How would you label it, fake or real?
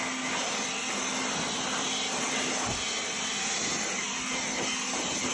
real